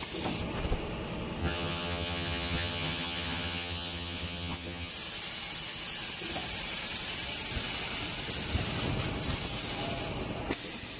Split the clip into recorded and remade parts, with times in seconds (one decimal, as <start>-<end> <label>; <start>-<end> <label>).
0.0-1.4 recorded; 1.4-4.9 remade; 4.9-11.0 recorded